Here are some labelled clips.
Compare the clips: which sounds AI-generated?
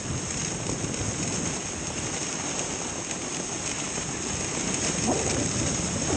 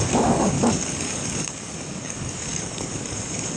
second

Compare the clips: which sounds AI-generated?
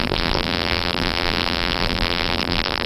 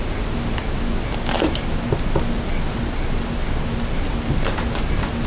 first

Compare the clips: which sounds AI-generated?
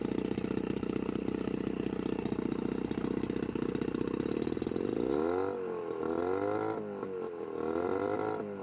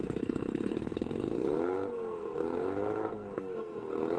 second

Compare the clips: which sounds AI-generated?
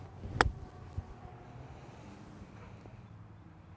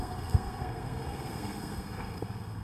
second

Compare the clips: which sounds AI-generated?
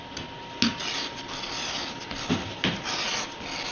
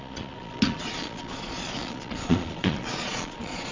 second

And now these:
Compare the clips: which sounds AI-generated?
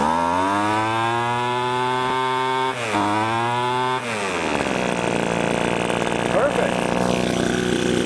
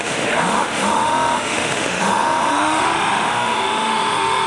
second